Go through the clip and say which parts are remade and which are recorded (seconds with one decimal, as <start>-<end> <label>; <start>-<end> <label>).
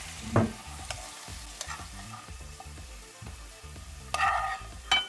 0.0-5.1 recorded